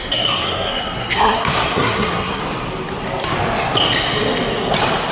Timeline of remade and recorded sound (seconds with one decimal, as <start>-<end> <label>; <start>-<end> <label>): 0.0-2.4 remade; 2.4-5.1 recorded